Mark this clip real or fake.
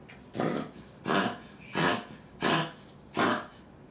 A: real